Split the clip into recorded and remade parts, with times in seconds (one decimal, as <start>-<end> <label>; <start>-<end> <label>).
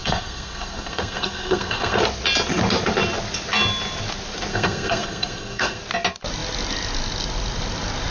0.0-2.0 remade; 2.0-4.5 recorded; 4.5-5.8 remade; 5.8-8.1 recorded